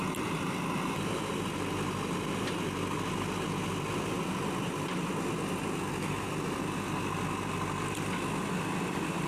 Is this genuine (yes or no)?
yes